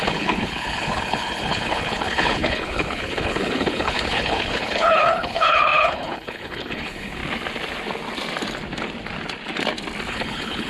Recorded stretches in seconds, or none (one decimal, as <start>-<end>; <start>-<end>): 7.2-10.1